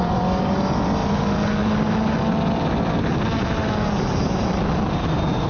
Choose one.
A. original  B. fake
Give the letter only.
A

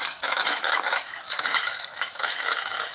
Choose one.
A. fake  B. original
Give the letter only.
A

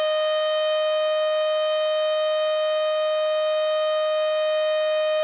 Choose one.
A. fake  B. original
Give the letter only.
B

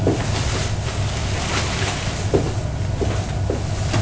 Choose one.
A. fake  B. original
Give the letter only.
B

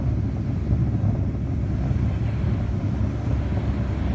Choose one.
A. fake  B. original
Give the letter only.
B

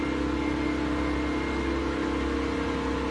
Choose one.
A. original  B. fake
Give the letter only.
A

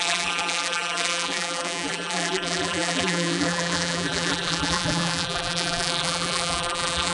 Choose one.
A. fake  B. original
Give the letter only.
A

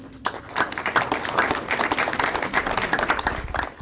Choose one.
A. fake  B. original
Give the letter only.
B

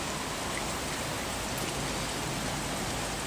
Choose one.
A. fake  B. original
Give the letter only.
B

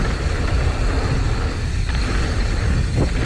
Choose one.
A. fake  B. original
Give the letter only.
B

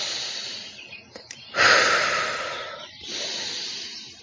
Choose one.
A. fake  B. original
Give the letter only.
B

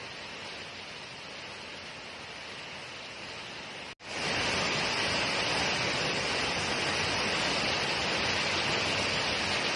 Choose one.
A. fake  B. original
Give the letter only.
B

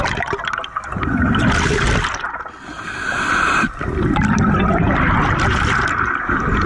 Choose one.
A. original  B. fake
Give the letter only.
A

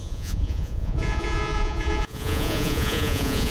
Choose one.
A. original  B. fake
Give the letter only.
B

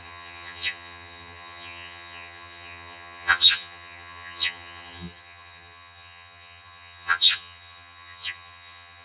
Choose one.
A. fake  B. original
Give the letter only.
A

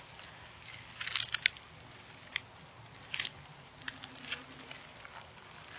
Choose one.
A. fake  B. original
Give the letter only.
B